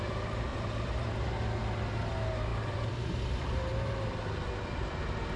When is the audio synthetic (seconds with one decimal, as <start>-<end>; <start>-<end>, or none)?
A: 0.5-1.1; 2.5-4.1